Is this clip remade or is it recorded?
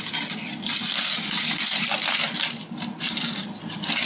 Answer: recorded